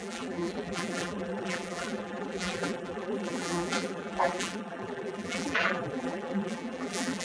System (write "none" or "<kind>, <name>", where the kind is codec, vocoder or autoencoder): vocoder, BigVGAN v2